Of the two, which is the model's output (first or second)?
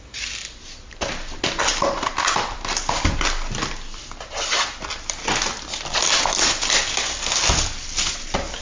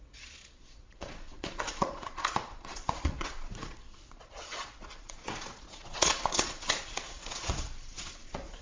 second